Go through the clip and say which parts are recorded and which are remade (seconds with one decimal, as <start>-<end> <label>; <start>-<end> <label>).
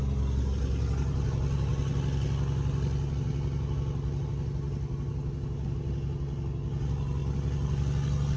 0.0-8.4 recorded